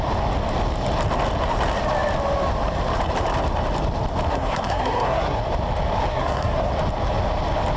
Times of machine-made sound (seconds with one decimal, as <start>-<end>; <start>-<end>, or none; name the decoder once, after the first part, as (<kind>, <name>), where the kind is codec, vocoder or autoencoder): 4.3-5.4 (codec, SNAC); 6.1-6.7